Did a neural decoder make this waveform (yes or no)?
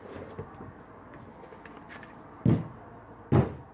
no